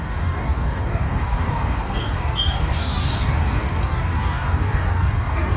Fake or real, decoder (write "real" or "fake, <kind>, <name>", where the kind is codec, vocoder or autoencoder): fake, codec, DAC